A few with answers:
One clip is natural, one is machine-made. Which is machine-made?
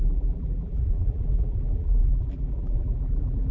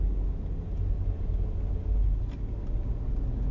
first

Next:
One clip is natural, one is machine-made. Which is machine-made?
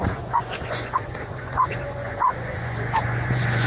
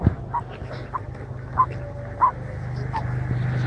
first